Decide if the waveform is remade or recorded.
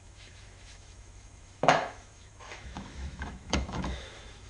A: remade